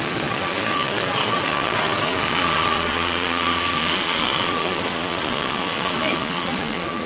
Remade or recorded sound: remade